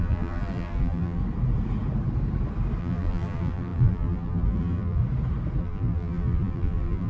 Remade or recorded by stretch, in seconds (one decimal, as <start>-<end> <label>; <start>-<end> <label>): 0.0-1.2 remade; 1.2-2.8 recorded; 2.8-5.0 remade; 5.0-5.6 recorded; 5.6-7.1 remade